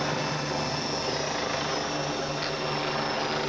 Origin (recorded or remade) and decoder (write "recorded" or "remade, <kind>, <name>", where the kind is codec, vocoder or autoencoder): recorded